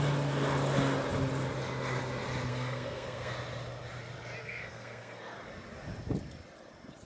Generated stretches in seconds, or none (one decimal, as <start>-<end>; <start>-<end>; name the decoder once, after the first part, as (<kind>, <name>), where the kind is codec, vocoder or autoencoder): 2.5-3.3 (codec, SNAC); 4.4-5.2